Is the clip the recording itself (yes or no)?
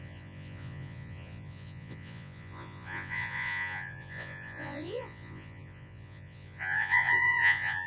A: no